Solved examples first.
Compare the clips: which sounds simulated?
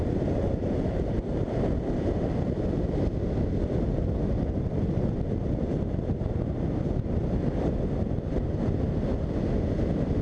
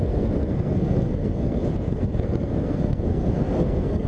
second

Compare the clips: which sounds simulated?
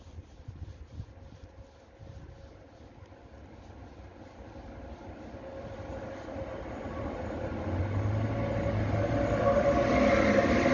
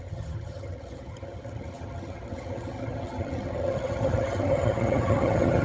second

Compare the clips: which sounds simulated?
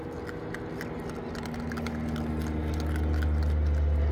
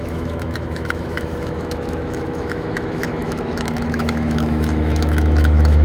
second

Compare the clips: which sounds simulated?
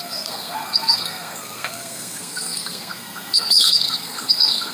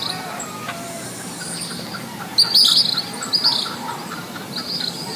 first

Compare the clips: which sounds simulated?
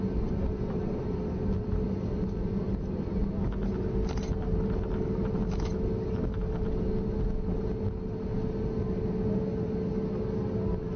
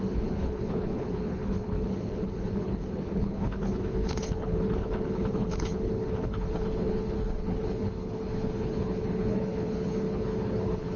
second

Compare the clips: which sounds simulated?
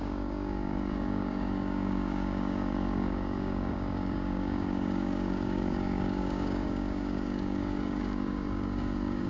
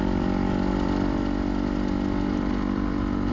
first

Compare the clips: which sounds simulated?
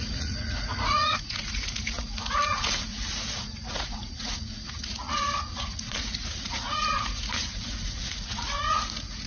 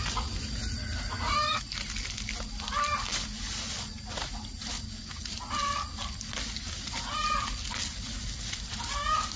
first